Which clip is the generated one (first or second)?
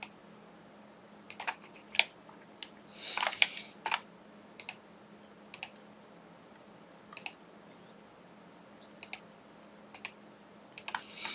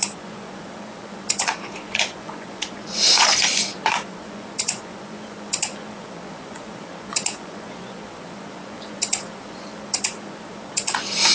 second